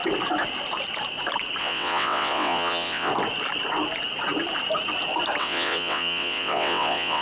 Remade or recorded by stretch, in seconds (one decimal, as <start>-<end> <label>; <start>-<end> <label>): 0.0-1.6 recorded; 1.6-3.1 remade; 3.1-5.4 recorded; 5.4-7.2 remade